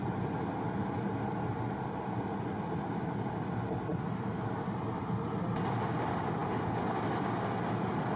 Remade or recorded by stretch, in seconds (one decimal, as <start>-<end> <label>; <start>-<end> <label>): 0.0-8.2 recorded